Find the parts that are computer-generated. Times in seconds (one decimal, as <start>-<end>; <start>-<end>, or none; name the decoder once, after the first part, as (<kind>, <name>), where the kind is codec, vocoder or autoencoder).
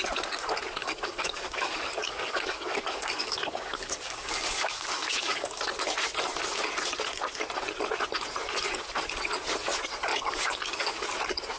0.8-5.6 (codec, DAC); 10.1-10.9